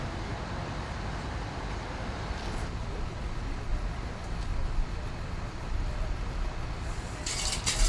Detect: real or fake real